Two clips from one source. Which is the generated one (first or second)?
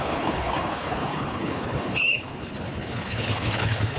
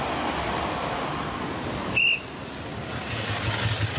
first